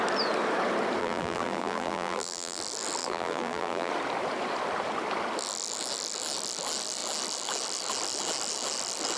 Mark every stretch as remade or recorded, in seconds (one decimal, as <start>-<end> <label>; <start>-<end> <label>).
0.0-1.0 recorded; 1.0-2.6 remade; 2.6-3.0 recorded; 3.0-3.9 remade; 3.9-9.2 recorded